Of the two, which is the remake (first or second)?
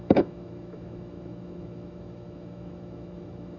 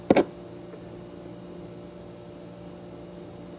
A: first